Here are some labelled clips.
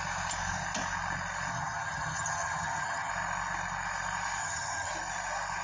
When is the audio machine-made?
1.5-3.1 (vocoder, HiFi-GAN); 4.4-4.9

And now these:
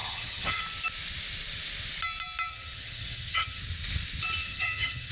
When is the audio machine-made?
0.0-0.6 (vocoder, HiFi-GAN); 2.5-3.6; 4.4-5.1